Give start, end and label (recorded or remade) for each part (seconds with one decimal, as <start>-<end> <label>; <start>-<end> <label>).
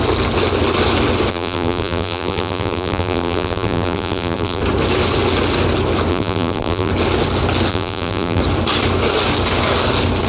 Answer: 0.0-1.3 recorded; 1.3-4.6 remade; 4.6-6.1 recorded; 6.1-6.9 remade; 6.9-7.7 recorded; 7.7-8.4 remade; 8.4-10.3 recorded